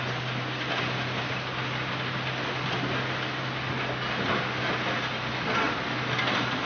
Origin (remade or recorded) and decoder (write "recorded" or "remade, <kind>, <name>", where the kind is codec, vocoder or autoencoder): recorded